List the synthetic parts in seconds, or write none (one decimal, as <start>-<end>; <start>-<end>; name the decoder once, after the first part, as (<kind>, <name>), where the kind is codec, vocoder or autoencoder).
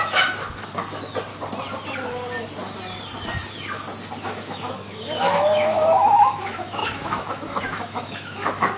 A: 0.0-0.8 (autoencoder, DAC-VAE); 4.2-8.8